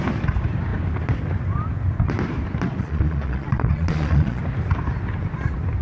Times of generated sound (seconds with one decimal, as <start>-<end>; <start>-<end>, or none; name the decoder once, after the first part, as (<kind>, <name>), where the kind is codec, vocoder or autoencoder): 2.8-4.4 (vocoder, Vocos)